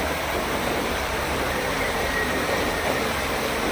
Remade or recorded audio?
remade